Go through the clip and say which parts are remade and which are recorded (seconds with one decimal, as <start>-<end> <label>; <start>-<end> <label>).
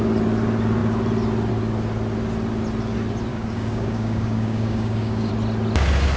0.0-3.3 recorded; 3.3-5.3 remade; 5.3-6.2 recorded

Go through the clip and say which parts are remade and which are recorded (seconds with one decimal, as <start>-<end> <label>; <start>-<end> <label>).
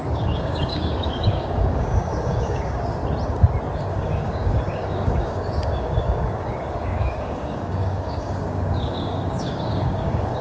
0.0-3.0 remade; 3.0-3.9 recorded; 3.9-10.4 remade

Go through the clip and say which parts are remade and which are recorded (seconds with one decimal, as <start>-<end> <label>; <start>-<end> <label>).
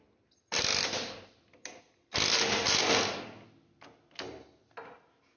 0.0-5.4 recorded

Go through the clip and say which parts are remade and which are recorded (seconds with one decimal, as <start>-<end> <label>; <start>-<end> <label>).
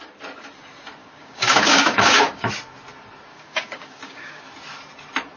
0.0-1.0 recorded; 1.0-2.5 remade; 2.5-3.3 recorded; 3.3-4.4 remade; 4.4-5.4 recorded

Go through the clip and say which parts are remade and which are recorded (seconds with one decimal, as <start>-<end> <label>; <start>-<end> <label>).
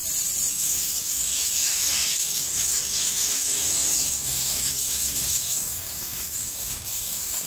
0.0-0.5 recorded; 0.5-7.5 remade